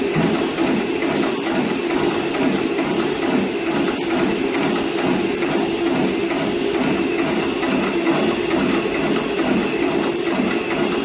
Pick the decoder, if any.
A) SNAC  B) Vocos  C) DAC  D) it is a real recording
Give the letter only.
D